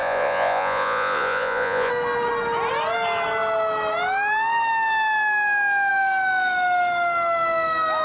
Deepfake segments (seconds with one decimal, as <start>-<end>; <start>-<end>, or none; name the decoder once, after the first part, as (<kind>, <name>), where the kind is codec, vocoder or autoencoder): 0.0-1.9 (vocoder, Vocos)